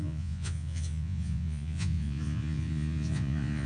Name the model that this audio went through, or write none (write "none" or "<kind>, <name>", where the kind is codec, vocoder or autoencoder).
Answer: vocoder, Vocos